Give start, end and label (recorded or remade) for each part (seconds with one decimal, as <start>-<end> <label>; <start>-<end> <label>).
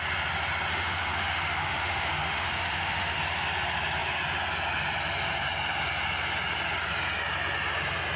0.0-0.7 recorded; 0.7-3.2 remade; 3.2-8.2 recorded